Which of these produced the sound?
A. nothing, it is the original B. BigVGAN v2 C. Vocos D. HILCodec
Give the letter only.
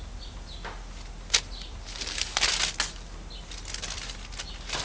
A